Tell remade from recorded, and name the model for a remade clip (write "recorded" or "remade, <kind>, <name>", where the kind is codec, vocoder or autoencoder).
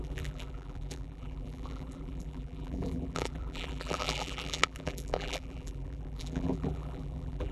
remade, vocoder, BigVGAN v2